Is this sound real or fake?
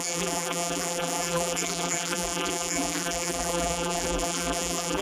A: fake